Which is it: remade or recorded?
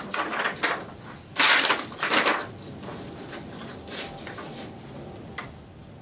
recorded